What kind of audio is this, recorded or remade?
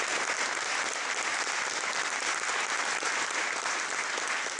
recorded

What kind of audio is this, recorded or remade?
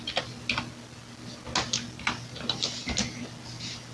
recorded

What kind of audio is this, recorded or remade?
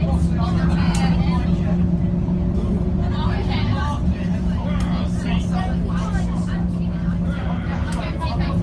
recorded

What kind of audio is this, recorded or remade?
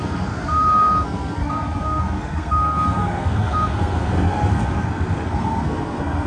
remade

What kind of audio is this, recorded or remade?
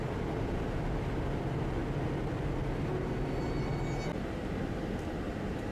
recorded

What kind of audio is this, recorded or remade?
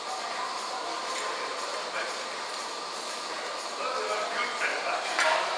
recorded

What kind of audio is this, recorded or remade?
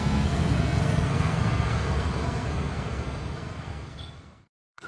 remade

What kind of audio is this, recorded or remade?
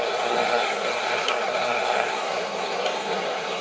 remade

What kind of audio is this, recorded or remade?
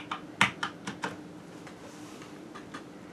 recorded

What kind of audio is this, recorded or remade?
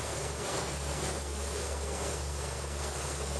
remade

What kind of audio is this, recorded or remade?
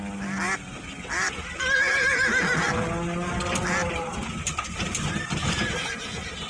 recorded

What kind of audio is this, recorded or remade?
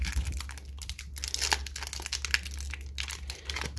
recorded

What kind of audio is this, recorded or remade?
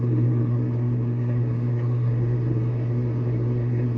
remade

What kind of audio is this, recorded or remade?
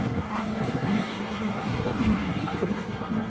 remade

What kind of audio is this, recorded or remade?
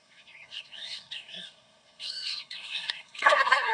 remade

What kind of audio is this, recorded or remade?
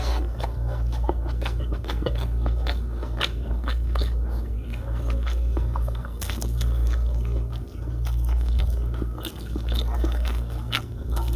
remade